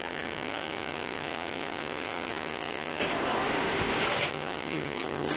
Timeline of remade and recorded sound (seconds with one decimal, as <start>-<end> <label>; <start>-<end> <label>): 0.0-3.0 remade; 3.0-4.3 recorded; 4.3-5.4 remade